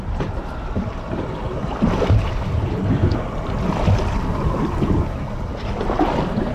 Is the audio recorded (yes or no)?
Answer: yes